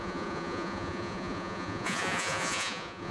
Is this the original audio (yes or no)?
no